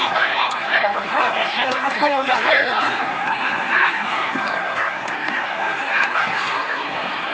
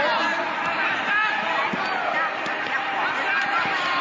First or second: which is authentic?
second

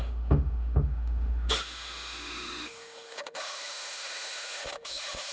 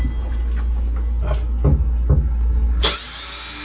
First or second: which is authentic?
second